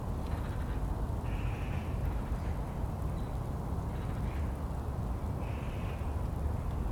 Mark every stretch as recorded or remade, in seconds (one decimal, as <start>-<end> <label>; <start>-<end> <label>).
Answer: 0.0-1.8 recorded; 1.8-4.1 remade; 4.1-6.9 recorded